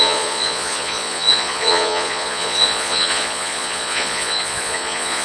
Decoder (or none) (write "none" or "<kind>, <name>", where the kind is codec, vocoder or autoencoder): vocoder, Vocos